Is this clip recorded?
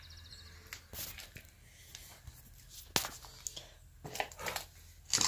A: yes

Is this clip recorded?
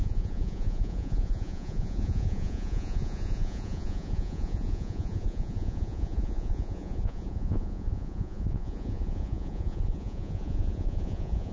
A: no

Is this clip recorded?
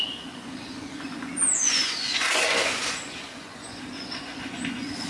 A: no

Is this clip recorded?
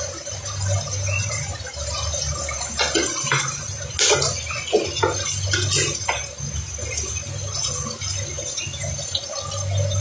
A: yes